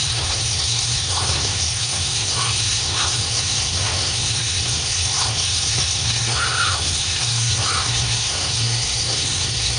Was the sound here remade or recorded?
remade